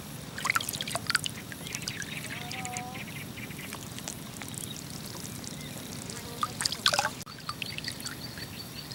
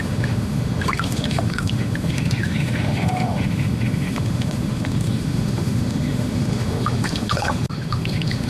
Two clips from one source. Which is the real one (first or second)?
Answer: first